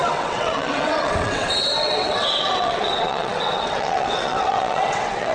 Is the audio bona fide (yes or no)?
no